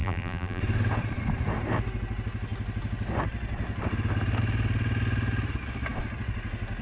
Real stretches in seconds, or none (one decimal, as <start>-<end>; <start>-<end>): 0.6-6.8